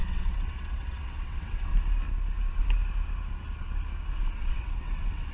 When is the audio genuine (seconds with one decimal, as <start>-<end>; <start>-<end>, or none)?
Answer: 1.7-4.4